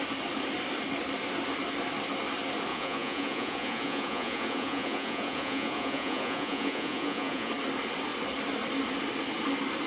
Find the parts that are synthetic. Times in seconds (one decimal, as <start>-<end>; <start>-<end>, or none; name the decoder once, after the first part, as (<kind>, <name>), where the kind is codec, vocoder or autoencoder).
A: 2.7-7.5 (vocoder, Vocos)